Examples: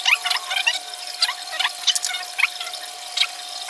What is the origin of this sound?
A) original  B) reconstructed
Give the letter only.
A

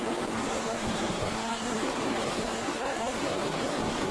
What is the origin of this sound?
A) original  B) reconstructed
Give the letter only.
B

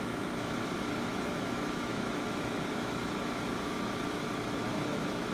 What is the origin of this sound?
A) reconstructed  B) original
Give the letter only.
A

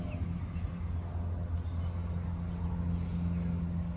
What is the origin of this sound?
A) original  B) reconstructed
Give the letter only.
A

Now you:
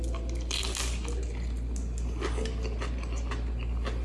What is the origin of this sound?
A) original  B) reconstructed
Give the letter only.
A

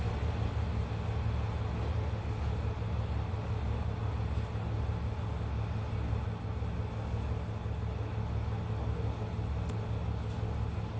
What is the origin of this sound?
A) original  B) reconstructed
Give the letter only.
A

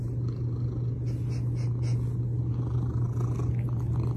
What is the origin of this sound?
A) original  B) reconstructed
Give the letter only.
A